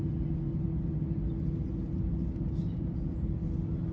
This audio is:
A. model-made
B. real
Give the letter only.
B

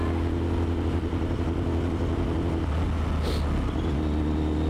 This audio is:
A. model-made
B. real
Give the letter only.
B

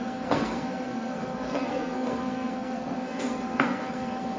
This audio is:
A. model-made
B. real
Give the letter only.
A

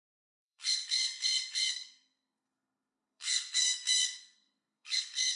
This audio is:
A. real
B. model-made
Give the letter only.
B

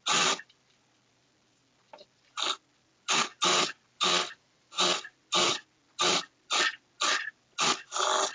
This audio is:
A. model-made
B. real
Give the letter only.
B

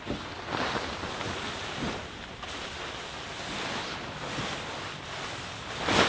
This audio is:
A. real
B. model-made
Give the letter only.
A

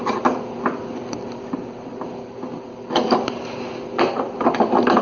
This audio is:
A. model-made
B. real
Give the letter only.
B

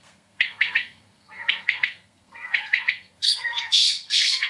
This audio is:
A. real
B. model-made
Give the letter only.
B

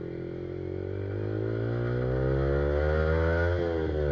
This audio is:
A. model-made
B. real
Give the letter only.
B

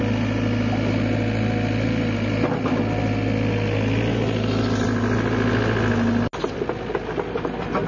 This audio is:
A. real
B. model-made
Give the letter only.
A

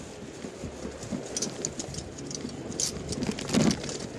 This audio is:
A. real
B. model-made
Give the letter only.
A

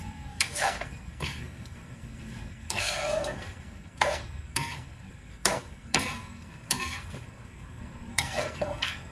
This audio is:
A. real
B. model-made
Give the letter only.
B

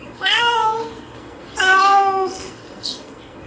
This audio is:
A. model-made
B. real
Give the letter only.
A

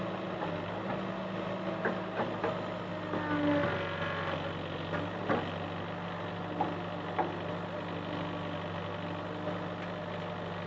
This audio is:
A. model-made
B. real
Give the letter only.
B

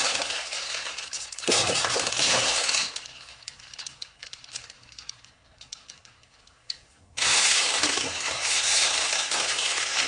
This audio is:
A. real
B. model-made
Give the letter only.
B